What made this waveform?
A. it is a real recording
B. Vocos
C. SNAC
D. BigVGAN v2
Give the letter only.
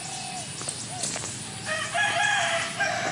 A